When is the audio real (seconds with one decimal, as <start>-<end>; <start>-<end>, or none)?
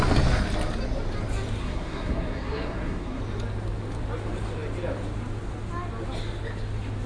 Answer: 0.0-1.6; 3.2-7.1